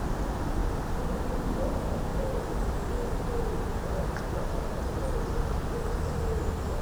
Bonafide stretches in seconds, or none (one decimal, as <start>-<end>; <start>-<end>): 0.0-0.6; 1.5-2.1; 4.5-6.8